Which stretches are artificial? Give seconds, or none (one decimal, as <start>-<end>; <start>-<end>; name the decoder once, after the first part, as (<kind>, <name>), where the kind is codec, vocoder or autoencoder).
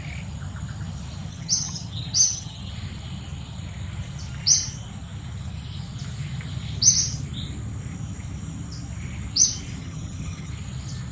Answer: 1.3-2.7 (vocoder, HiFi-GAN); 9.8-10.5